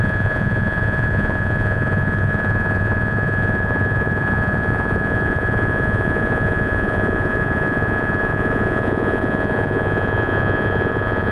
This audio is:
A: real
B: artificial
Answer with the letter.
B